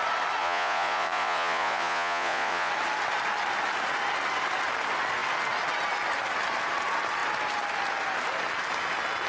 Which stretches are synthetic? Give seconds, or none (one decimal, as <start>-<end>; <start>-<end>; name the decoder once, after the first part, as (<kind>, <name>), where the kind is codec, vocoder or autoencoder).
0.4-2.7 (vocoder, Vocos)